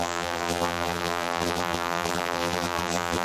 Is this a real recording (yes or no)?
no